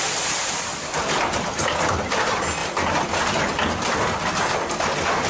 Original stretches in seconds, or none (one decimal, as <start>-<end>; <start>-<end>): 0.0-5.3